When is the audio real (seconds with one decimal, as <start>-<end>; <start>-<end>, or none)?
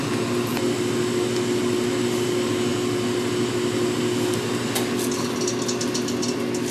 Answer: 0.0-6.7